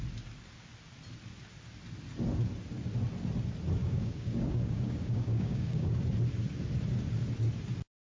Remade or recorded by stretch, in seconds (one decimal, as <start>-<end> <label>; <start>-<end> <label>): 0.0-3.8 recorded; 3.8-5.9 remade; 5.9-8.1 recorded